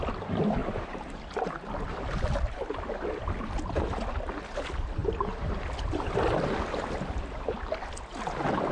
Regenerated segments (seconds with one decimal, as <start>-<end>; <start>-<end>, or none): 0.6-1.2; 5.0-5.6